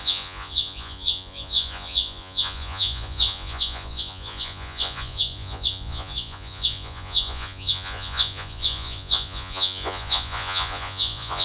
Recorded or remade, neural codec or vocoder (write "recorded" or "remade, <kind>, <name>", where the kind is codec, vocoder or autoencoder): remade, vocoder, Vocos